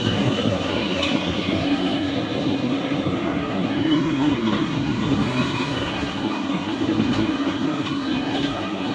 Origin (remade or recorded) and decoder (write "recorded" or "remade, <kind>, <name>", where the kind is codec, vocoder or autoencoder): remade, codec, SNAC